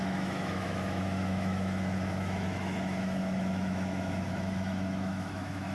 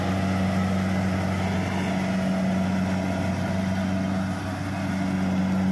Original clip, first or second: second